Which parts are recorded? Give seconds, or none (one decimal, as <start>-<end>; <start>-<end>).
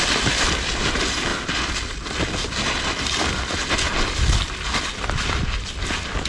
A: 0.0-6.3